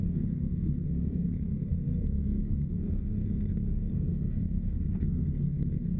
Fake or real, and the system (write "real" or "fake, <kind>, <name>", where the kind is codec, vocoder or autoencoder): fake, codec, SNAC